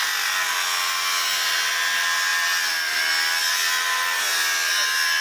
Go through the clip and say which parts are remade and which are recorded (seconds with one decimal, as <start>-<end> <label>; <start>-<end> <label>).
0.0-5.2 recorded